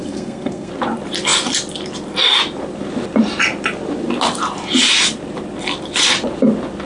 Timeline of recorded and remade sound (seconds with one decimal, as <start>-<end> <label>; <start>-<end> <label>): 0.0-0.7 remade; 0.7-6.9 recorded